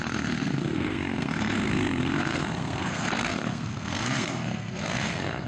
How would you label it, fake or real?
fake